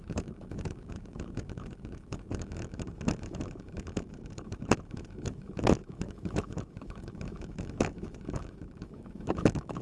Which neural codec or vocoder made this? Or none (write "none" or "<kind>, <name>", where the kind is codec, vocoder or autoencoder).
autoencoder, DAC-VAE